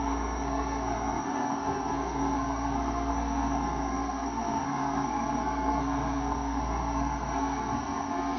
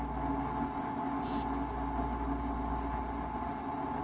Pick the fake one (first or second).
first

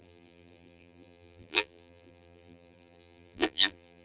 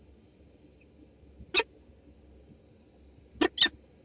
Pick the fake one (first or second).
first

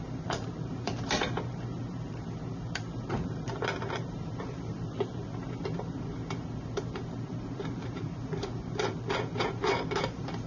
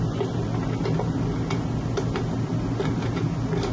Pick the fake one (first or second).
first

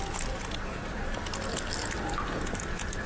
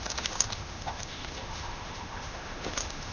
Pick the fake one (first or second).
second